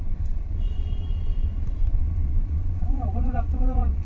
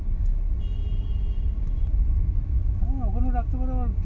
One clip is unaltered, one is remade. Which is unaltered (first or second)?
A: second